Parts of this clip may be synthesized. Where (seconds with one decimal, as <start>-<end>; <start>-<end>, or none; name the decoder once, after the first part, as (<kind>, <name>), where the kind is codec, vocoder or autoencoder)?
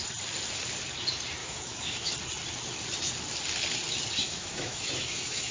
1.4-2.1 (autoencoder, DAC-VAE); 4.2-5.5